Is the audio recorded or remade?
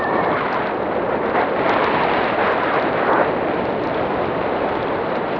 recorded